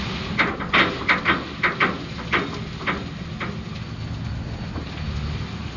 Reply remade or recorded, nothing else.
recorded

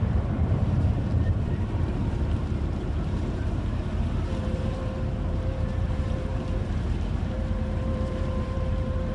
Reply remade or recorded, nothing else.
remade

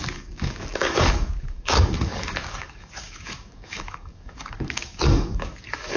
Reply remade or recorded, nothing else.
remade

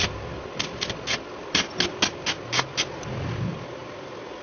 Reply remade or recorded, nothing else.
recorded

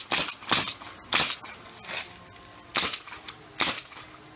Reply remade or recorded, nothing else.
recorded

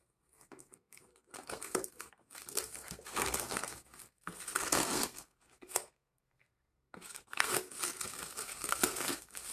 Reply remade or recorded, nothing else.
remade